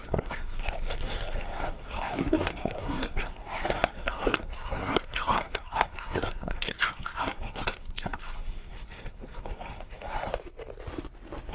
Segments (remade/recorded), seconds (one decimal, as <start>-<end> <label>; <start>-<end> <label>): 0.0-10.3 remade; 10.3-11.5 recorded